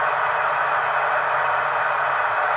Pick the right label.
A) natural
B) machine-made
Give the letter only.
A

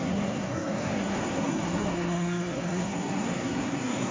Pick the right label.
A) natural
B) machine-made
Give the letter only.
B